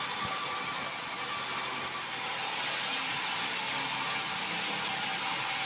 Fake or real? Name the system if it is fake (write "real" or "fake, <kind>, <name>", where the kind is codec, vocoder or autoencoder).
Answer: real